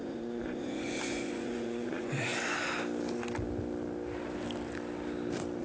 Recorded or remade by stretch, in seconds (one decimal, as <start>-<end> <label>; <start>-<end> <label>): 0.0-2.3 remade; 2.3-5.6 recorded